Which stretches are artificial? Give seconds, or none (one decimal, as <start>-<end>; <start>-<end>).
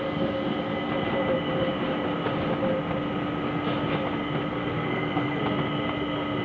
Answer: 4.5-5.4